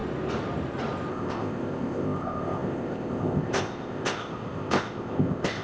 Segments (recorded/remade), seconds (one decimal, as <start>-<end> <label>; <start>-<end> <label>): 0.0-1.1 recorded; 1.1-5.6 remade